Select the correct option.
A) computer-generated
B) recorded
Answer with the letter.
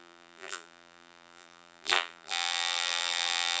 A